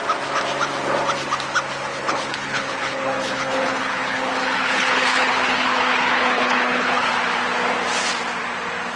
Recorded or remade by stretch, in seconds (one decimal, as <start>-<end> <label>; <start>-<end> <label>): 0.0-1.9 recorded; 1.9-7.1 remade; 7.1-9.0 recorded